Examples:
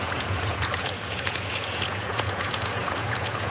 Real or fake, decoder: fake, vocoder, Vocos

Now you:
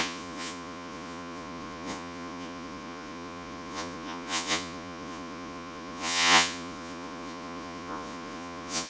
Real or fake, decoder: fake, vocoder, Vocos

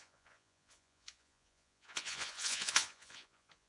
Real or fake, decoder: fake, vocoder, Vocos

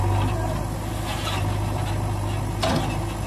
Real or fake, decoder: real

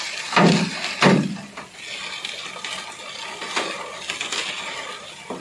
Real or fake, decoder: real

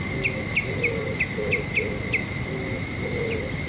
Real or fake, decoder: real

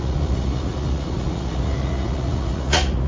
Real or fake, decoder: fake, vocoder, Vocos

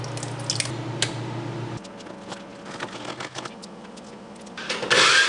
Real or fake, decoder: real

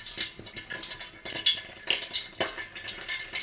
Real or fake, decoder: real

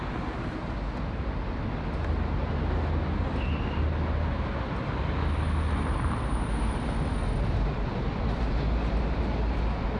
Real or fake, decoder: real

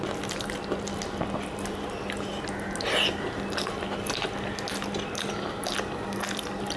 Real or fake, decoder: real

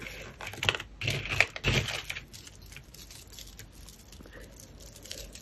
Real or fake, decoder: real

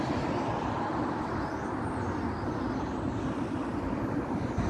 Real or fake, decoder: real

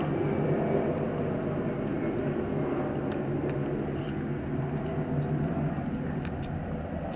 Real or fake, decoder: real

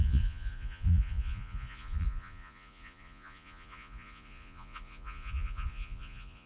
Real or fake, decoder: fake, vocoder, Vocos